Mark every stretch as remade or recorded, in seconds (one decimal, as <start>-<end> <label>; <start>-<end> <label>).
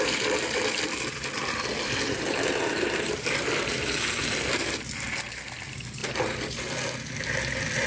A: 0.0-7.9 remade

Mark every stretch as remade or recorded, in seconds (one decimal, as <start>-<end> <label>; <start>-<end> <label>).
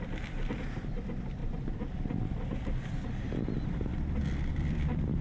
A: 0.0-1.4 remade; 1.4-4.5 recorded; 4.5-5.2 remade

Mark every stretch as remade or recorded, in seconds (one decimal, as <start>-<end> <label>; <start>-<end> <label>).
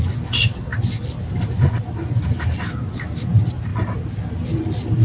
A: 0.0-0.7 recorded; 0.7-1.9 remade; 1.9-5.0 recorded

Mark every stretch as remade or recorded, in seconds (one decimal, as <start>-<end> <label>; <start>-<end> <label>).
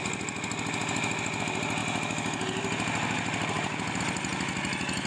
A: 0.0-5.1 recorded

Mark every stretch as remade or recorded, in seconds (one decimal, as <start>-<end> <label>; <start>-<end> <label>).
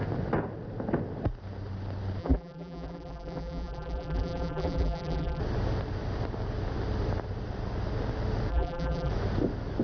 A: 0.0-2.2 recorded; 2.2-5.4 remade; 5.4-8.5 recorded; 8.5-9.1 remade; 9.1-9.8 recorded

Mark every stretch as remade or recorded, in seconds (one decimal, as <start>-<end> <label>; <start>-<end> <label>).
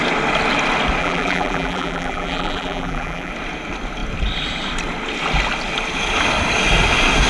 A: 0.0-1.0 recorded; 1.0-3.3 remade; 3.3-7.3 recorded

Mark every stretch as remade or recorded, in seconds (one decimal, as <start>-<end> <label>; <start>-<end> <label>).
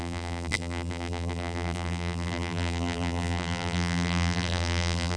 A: 0.0-5.2 remade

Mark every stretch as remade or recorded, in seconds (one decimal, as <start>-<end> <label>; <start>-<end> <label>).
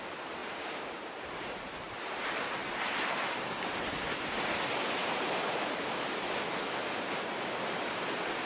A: 0.0-0.4 recorded; 0.4-2.2 remade; 2.2-5.0 recorded; 5.0-5.6 remade; 5.6-8.5 recorded